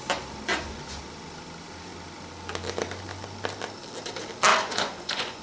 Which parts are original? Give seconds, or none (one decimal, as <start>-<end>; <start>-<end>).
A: 0.0-0.5; 1.0-4.5